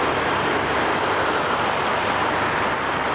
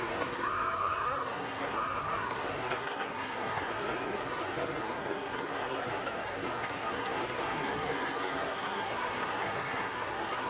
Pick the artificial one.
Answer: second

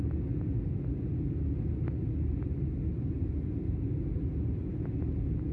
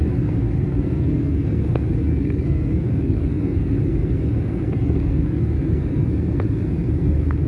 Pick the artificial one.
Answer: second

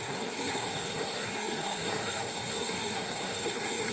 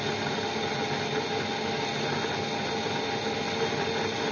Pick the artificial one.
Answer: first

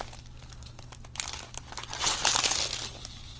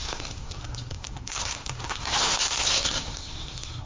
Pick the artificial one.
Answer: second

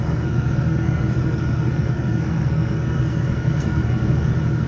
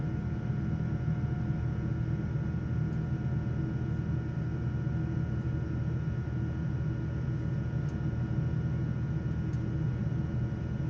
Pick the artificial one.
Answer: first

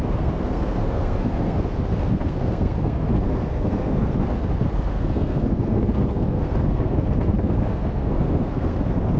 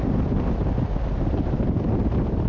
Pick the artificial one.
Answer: first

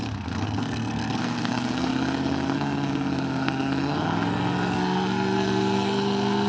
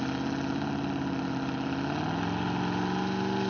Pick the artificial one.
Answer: first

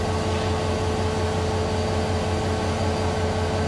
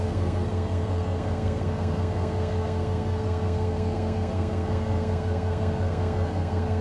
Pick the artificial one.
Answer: second